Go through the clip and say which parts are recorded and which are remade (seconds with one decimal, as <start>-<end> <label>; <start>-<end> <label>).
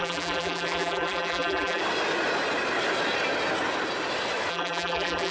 0.0-1.8 remade; 1.8-4.5 recorded; 4.5-5.3 remade